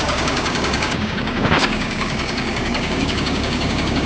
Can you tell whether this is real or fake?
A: fake